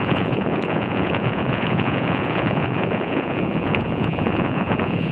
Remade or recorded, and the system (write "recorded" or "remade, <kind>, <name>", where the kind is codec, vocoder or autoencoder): remade, vocoder, Vocos